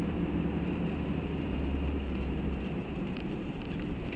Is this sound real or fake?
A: fake